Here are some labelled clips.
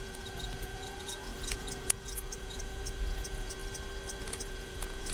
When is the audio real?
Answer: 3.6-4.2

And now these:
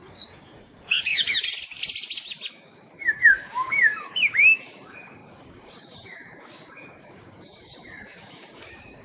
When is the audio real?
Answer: 1.1-2.5

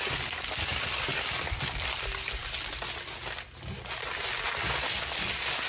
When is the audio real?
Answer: 0.0-5.7

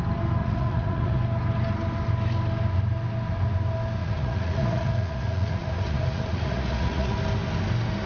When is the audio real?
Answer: 0.0-0.4; 1.2-4.0; 7.2-8.1

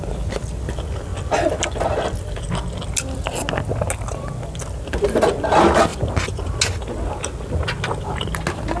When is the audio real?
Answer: 0.0-8.8